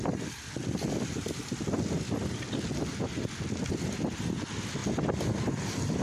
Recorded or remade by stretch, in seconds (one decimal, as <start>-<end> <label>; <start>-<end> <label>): 0.0-6.0 recorded